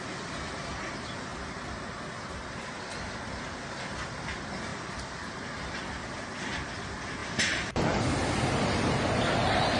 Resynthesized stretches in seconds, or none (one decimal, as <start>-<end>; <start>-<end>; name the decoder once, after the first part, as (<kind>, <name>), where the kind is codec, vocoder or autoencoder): 4.7-5.7 (vocoder, BigVGAN v2); 7.2-7.8